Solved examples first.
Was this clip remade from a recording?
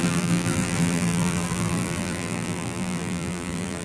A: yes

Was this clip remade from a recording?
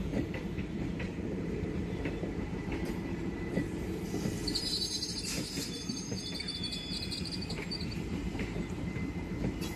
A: yes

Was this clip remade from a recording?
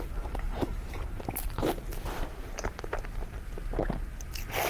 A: yes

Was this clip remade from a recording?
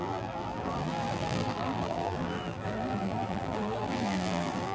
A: yes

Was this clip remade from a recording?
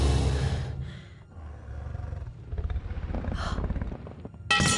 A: no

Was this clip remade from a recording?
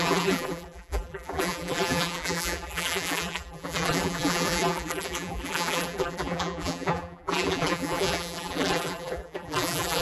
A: yes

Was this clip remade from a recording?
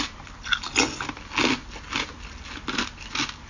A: no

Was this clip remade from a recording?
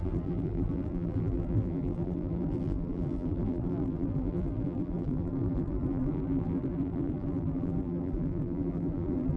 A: yes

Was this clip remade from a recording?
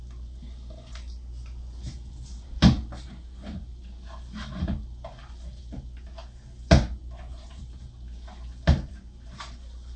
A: no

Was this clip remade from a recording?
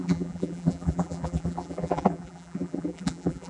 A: yes